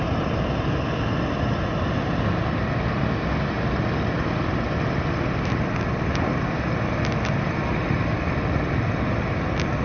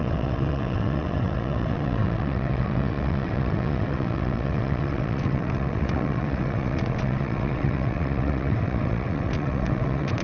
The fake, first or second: second